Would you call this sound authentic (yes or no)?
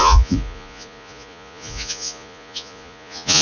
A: no